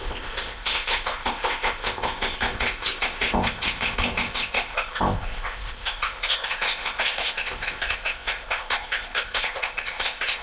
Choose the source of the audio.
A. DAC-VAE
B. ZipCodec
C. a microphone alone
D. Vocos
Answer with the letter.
B